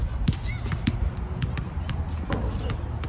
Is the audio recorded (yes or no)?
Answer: yes